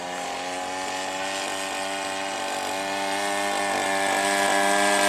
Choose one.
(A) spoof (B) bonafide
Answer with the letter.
B